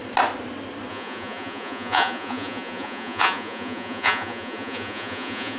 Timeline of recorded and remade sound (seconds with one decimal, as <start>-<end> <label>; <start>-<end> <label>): 0.0-0.9 recorded; 0.9-5.6 remade